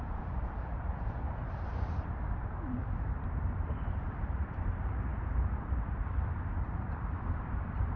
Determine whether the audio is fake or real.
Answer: fake